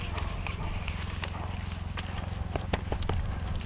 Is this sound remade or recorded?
recorded